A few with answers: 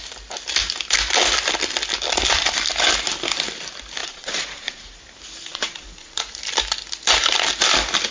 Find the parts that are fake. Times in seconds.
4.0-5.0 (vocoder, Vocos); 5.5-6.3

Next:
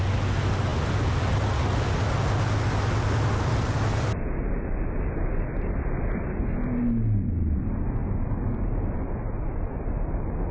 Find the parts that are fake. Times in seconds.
none

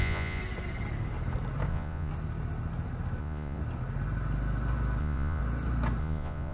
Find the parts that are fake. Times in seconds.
0.0-0.4 (vocoder, Vocos); 1.7-2.1; 3.2-3.6; 5.0-5.4; 6.0-6.5